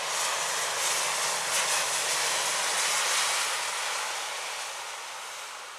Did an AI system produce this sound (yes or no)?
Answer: no